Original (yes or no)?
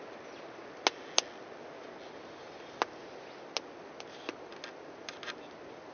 yes